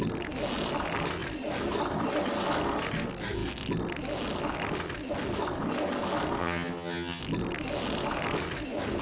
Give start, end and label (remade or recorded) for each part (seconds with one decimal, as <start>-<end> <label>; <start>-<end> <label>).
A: 0.0-6.4 recorded; 6.4-7.2 remade; 7.2-9.0 recorded